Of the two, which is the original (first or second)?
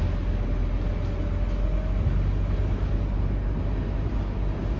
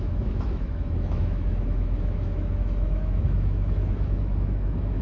first